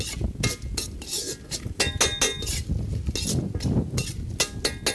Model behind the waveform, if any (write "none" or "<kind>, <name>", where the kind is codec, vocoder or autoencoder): none